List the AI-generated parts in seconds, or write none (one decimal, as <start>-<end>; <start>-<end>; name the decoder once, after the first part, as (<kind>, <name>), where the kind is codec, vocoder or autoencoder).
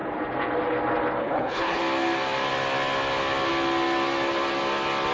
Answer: 1.2-1.8 (codec, HILCodec)